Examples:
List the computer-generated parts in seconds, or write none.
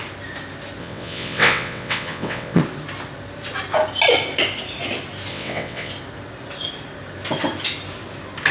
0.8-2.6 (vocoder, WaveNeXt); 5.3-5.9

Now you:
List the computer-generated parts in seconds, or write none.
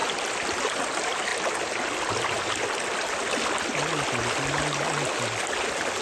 none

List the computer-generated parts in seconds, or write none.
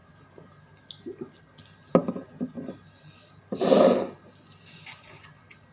none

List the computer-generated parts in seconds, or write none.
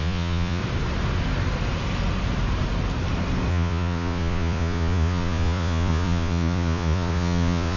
0.0-0.6 (vocoder, Vocos); 3.5-7.8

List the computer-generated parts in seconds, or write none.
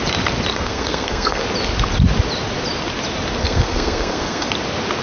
0.5-1.4 (codec, SNAC); 3.4-4.5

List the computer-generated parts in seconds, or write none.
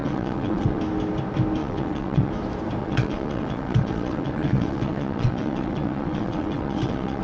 0.0-0.8 (vocoder, WaveNeXt); 1.6-2.3; 2.8-7.2